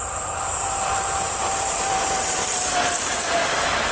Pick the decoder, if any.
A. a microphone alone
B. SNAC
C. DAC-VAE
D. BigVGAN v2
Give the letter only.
D